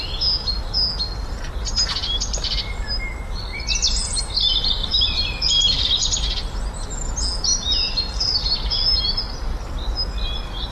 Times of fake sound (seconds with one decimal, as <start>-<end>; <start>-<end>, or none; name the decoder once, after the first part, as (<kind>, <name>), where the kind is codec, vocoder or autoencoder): 2.0-2.9 (vocoder, BigVGAN v2); 4.8-5.9; 7.5-9.2